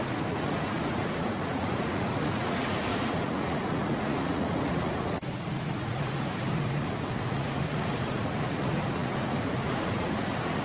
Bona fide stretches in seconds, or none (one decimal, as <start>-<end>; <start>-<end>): none